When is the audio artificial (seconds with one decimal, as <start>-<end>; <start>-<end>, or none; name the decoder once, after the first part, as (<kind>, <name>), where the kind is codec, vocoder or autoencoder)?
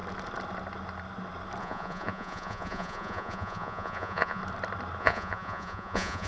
1.6-4.4 (vocoder, Vocos); 5.0-6.3